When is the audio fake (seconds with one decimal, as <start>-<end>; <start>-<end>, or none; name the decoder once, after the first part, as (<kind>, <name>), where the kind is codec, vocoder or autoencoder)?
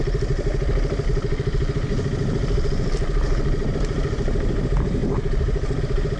3.7-6.2 (vocoder, BigVGAN v2)